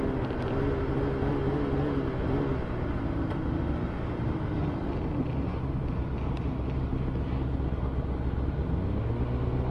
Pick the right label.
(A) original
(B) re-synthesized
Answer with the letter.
A